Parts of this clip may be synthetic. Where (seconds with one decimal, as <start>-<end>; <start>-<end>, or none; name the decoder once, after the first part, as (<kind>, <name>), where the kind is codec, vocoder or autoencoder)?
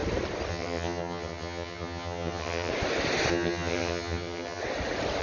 0.5-2.7 (vocoder, HiFi-GAN); 3.3-4.6